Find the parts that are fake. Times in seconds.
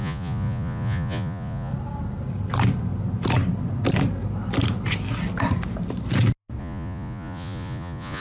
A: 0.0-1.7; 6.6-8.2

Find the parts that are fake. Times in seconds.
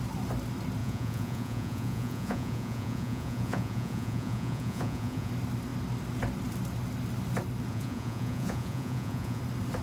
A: 0.8-5.3; 7.7-9.4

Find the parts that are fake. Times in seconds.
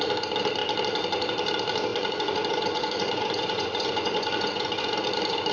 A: 1.9-5.5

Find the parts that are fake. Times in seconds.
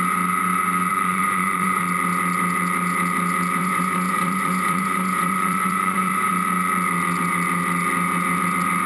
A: 0.9-1.8; 3.6-6.3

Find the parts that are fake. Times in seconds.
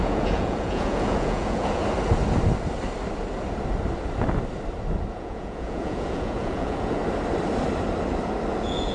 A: 0.0-1.8; 5.1-7.0; 8.5-8.9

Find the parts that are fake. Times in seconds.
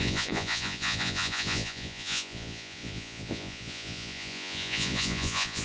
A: 0.0-5.6